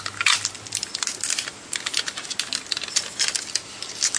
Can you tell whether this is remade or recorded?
recorded